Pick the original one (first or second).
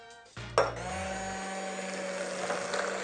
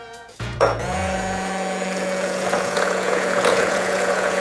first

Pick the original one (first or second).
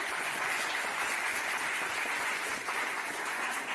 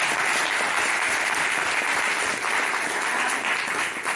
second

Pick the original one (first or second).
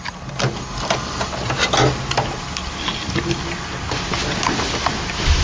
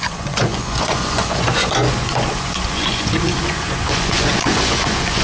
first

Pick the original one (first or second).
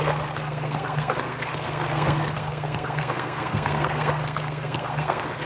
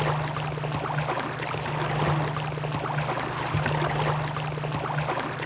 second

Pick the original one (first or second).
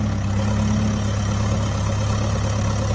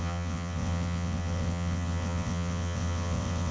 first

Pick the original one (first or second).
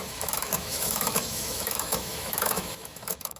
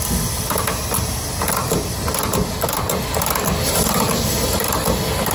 second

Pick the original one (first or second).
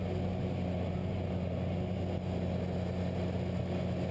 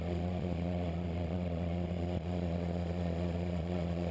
first